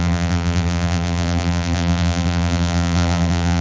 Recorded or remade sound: remade